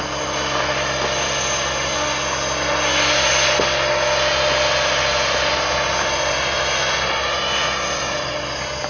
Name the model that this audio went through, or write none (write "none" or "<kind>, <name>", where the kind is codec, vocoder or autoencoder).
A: none